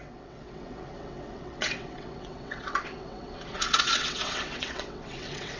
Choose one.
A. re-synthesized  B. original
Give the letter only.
A